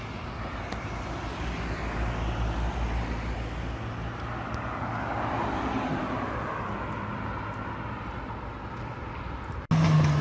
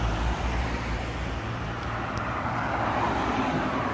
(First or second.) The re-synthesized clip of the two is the second